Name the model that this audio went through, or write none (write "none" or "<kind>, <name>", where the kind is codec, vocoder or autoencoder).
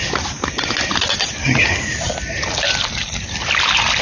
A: none